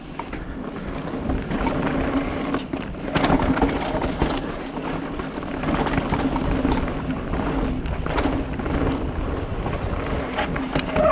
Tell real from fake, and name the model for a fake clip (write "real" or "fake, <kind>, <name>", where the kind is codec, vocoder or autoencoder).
real